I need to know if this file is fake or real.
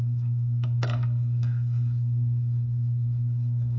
fake